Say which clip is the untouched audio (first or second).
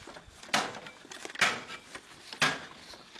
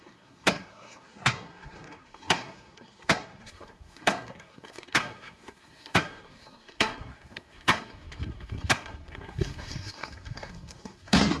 first